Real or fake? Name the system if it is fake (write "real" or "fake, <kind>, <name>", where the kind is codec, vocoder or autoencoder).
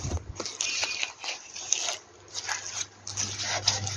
real